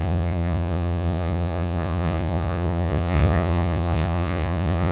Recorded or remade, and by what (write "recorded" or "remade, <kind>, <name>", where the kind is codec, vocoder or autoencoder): remade, vocoder, Vocos